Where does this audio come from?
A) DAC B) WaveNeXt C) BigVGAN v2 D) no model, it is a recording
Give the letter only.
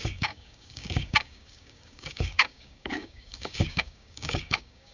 A